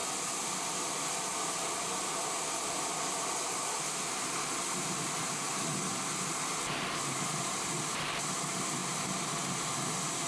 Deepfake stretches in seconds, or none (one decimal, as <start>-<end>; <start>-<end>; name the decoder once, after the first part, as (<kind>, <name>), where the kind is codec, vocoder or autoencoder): none